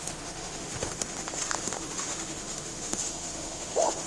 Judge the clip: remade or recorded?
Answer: remade